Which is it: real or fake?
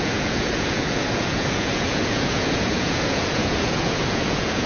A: fake